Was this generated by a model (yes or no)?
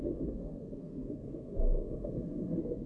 yes